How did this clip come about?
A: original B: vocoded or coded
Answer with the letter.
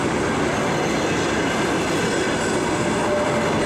A